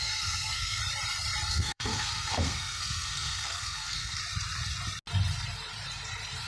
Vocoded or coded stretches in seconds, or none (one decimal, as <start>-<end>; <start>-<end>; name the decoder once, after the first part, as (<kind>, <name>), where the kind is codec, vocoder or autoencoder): 0.0-0.8 (codec, SNAC); 1.5-4.2